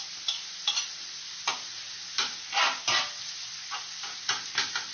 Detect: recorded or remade recorded